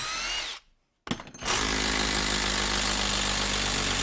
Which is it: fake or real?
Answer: real